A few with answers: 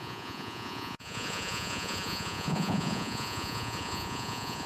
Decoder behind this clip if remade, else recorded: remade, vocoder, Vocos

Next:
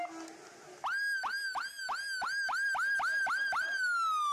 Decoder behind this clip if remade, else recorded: recorded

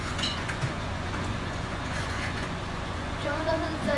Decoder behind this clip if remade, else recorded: remade, vocoder, Vocos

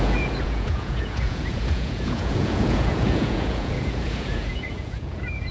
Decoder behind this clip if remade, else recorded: remade, vocoder, Vocos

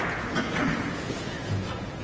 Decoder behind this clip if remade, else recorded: remade, vocoder, Vocos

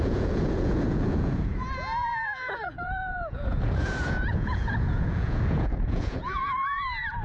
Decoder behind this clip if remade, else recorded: remade, vocoder, Vocos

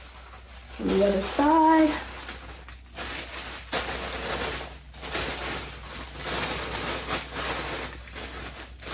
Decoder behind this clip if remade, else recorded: recorded